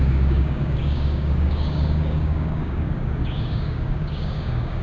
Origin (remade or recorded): remade